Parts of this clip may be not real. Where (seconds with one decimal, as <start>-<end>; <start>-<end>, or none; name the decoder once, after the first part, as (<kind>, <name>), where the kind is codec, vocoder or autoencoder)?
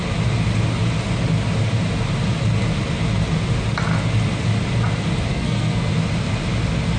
5.3-5.9 (codec, SNAC)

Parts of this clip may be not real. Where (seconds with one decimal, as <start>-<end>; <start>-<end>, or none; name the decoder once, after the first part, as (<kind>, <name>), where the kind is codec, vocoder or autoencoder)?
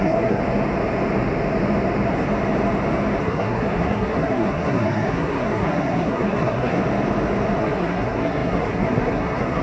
0.0-0.4 (codec, SNAC); 3.2-6.8; 7.6-9.6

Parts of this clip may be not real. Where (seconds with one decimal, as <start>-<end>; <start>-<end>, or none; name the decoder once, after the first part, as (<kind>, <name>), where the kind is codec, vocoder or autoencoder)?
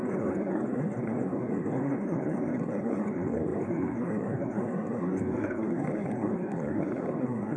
0.0-7.6 (codec, SNAC)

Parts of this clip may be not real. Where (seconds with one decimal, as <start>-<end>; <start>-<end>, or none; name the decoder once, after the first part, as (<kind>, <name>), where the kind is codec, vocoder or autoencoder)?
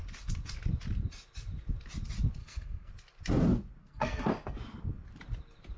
2.4-2.9 (codec, SNAC); 3.8-4.3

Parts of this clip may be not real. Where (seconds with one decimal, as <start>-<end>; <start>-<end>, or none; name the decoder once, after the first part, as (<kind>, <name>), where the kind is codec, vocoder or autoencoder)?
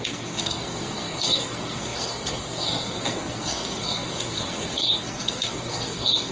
0.0-6.3 (codec, SNAC)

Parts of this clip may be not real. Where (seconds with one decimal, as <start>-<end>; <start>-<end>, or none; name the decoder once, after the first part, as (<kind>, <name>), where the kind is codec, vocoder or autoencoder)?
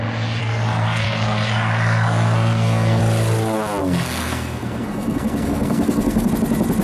0.4-3.0 (codec, SNAC); 3.8-6.3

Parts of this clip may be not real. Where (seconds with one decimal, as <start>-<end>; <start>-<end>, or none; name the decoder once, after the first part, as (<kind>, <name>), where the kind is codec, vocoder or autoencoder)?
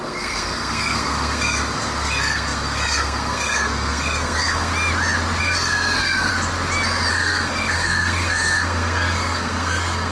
0.0-4.7 (codec, SNAC); 5.4-6.3; 7.1-10.1